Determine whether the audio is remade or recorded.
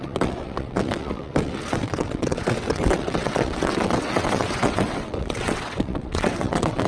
remade